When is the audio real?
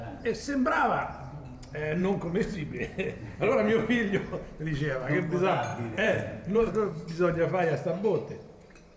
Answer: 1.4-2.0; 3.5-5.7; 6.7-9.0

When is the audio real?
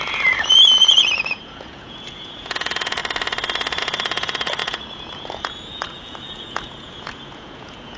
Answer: 3.0-3.8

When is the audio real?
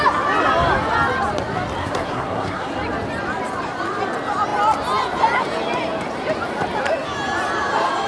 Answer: 0.0-1.8; 2.7-8.1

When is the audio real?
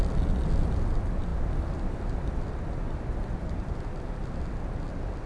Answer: 0.0-5.3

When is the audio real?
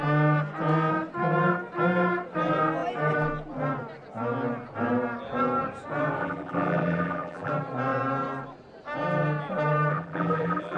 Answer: 0.0-6.2; 7.5-9.9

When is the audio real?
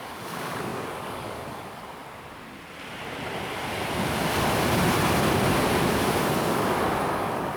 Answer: 2.0-5.9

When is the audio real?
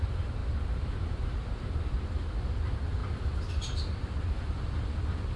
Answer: 0.0-5.4